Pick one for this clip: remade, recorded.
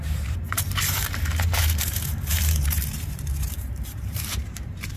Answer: remade